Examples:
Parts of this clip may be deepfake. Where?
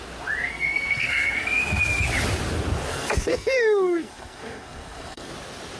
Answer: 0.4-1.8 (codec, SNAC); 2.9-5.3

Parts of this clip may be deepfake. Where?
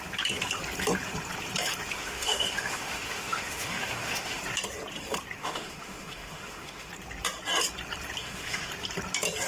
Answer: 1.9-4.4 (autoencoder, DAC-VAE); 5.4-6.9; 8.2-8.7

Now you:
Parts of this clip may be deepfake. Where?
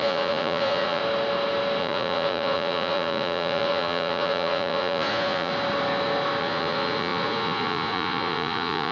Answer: 0.0-1.0 (vocoder, Vocos); 1.8-5.5; 6.4-8.9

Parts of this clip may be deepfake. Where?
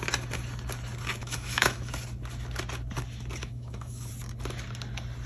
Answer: 1.2-1.9 (autoencoder, DAC-VAE); 3.4-4.1